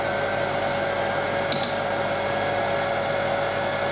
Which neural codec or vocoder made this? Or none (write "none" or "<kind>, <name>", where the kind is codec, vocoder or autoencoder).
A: none